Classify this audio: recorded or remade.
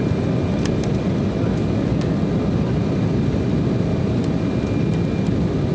recorded